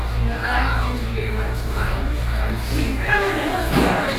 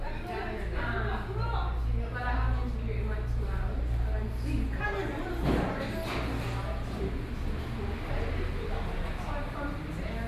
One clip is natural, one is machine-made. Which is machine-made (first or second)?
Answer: first